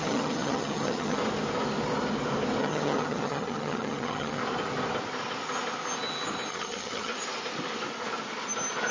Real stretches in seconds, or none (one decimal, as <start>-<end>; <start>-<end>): 1.2-2.6; 4.4-6.5; 7.1-8.9